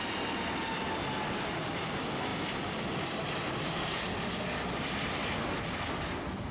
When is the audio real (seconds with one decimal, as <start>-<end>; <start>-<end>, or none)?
0.0-2.3; 3.9-6.5